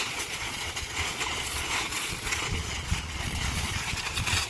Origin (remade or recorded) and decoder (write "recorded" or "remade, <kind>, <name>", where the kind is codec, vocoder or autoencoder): remade, vocoder, Vocos